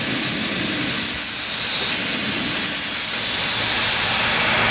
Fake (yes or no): no